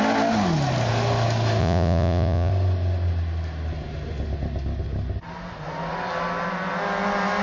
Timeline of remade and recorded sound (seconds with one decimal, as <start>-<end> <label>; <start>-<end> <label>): 0.0-1.6 recorded; 1.6-2.5 remade; 2.5-7.4 recorded